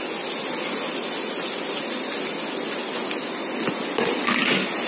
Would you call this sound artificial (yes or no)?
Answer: no